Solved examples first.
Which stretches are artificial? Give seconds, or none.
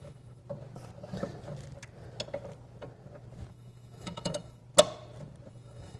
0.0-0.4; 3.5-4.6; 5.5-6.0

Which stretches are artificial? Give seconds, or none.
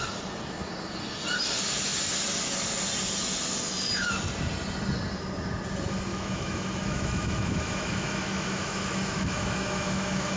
6.1-10.4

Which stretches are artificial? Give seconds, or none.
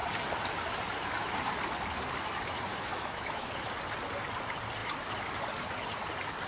2.7-3.7